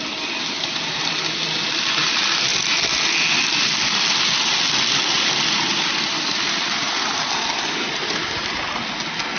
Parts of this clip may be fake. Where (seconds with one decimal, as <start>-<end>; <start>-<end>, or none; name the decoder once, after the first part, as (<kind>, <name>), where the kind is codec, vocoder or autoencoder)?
none